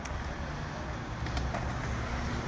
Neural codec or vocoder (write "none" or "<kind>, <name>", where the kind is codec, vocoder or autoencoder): none